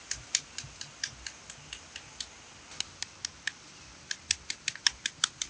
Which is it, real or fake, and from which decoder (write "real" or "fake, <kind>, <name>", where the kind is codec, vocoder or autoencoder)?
real